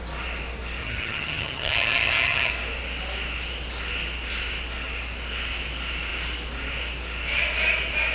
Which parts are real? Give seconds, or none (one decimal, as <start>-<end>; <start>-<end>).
0.0-0.8; 2.5-8.1